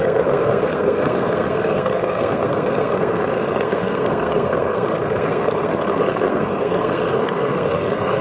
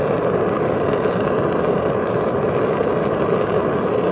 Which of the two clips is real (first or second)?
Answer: second